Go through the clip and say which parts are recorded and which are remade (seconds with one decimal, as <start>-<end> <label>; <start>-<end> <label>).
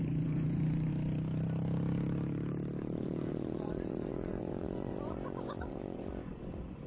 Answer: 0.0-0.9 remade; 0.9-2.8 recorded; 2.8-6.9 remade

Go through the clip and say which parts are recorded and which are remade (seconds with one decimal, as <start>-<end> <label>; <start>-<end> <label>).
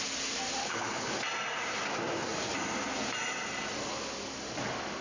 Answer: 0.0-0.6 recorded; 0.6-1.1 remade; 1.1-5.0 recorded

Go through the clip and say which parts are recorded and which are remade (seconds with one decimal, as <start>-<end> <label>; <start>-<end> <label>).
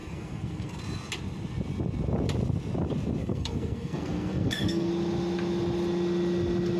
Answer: 0.0-0.8 remade; 0.8-3.2 recorded; 3.2-4.9 remade; 4.9-6.8 recorded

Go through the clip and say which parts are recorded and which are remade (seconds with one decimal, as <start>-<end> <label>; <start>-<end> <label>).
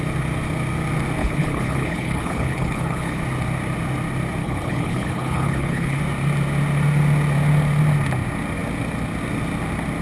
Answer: 0.0-1.2 recorded; 1.2-3.2 remade; 3.2-4.4 recorded; 4.4-6.0 remade; 6.0-10.0 recorded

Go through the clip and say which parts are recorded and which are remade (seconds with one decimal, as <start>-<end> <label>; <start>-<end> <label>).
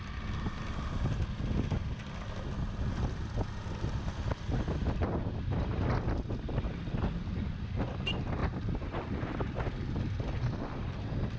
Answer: 0.0-11.4 recorded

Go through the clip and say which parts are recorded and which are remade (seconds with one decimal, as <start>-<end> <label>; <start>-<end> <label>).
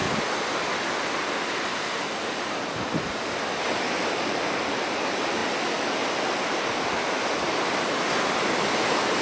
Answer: 0.0-1.7 recorded; 1.7-3.3 remade; 3.3-9.2 recorded